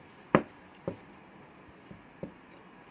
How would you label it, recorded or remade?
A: recorded